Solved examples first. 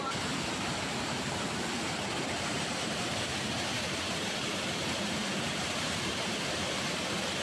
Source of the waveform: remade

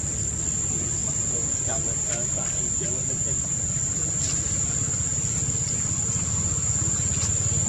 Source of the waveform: recorded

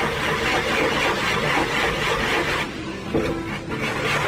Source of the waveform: recorded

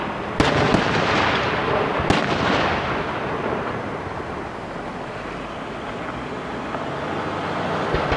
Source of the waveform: recorded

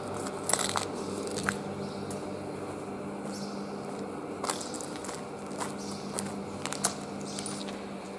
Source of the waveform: recorded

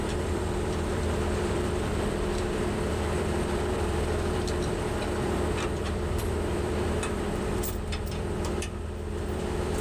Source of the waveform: remade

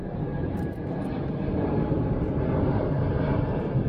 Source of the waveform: remade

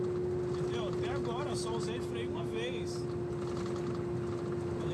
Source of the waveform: recorded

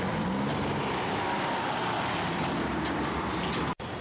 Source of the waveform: remade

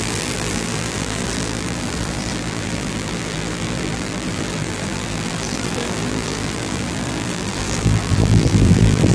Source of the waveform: remade